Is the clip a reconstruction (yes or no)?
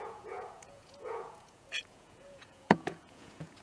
yes